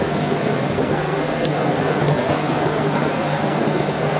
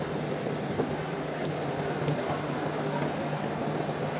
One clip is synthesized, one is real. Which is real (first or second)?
second